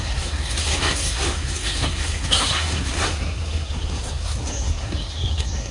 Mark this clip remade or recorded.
remade